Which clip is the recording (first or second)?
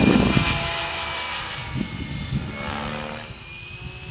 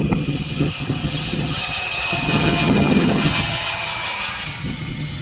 first